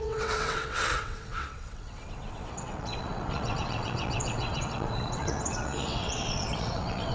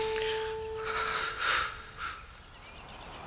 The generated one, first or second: first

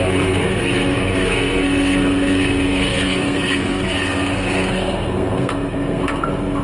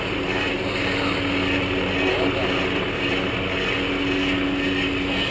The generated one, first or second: first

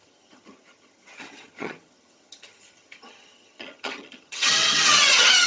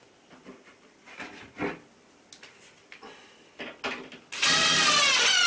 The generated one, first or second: first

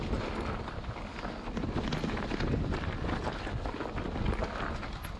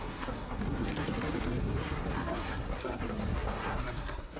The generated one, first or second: second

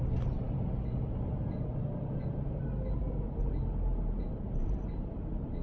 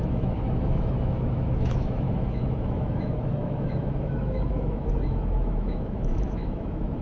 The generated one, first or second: second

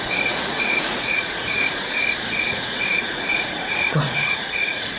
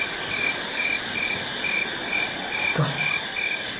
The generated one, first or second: first